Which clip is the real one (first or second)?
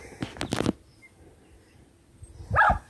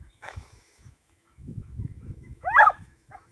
first